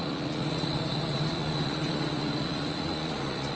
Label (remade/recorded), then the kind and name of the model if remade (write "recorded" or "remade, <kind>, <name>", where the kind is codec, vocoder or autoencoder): remade, vocoder, Vocos